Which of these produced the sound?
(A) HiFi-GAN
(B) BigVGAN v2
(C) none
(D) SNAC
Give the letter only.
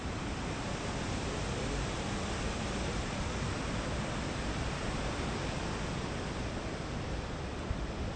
C